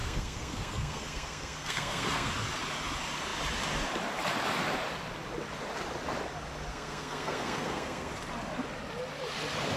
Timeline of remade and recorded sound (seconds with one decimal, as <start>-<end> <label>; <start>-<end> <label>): 0.0-2.3 remade; 2.3-6.7 recorded; 6.7-8.1 remade; 8.1-9.8 recorded